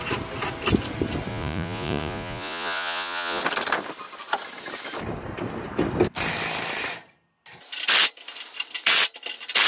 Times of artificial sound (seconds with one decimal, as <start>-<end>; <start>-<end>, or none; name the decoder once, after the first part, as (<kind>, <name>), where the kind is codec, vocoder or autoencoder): 1.3-3.4 (vocoder, Vocos)